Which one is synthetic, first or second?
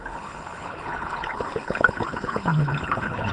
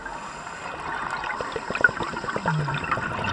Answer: first